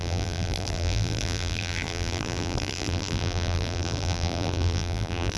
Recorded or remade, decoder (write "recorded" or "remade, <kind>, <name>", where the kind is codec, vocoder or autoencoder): remade, vocoder, BigVGAN v2